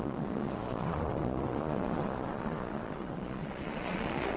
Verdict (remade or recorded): remade